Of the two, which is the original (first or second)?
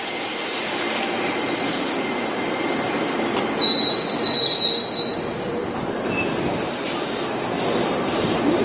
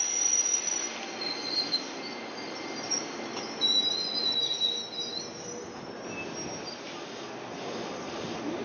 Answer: second